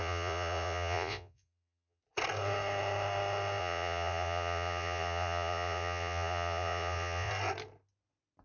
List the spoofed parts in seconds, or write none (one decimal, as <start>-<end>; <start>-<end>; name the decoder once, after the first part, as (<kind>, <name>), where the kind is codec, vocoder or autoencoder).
0.0-2.0 (vocoder, Vocos); 3.6-7.3